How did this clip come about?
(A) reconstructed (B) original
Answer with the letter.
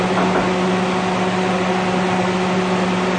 B